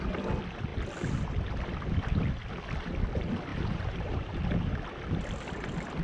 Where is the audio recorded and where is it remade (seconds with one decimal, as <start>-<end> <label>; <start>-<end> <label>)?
0.0-3.5 recorded; 3.5-4.2 remade; 4.2-6.0 recorded